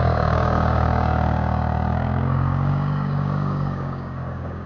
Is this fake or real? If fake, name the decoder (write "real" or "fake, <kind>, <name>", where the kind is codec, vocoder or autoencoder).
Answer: fake, codec, DAC